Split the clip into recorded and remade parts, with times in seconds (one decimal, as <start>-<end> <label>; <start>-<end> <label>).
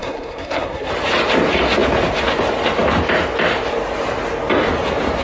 0.0-0.9 remade; 0.9-5.2 recorded